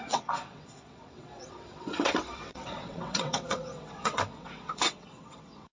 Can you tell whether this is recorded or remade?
remade